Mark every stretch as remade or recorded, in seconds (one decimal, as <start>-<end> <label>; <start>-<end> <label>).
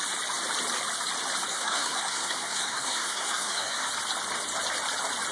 0.0-1.5 recorded; 1.5-3.9 remade; 3.9-5.3 recorded